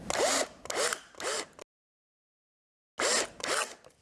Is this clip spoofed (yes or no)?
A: no